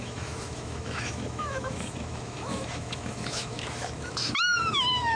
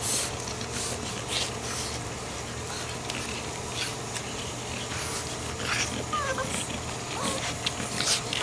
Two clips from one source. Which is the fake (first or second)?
first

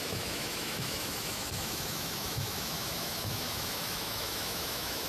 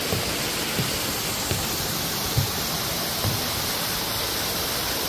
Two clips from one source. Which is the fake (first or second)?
first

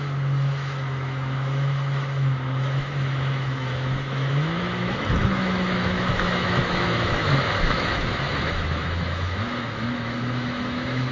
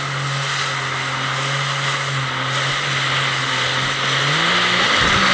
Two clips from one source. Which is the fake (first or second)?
first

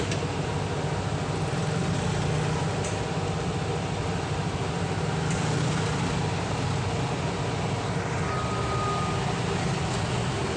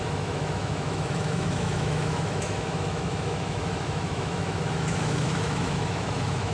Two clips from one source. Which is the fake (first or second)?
second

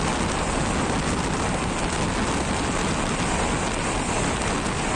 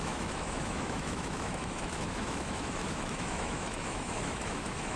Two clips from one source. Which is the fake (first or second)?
second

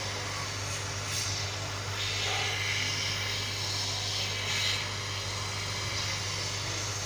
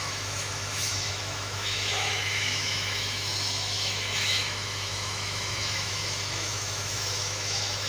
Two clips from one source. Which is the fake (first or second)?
second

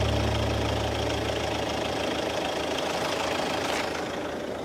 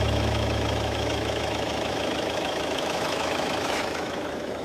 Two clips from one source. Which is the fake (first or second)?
second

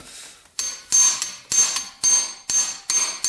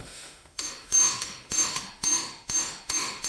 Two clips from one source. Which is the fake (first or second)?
second